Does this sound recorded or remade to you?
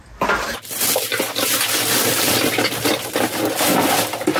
recorded